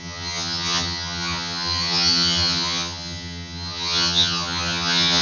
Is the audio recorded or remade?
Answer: remade